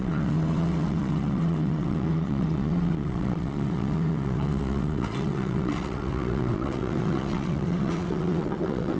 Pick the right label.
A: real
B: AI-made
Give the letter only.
B